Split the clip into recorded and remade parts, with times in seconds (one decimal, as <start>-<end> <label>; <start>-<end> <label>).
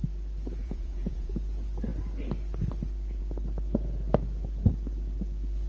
0.0-0.6 recorded; 0.6-1.3 remade; 1.3-5.7 recorded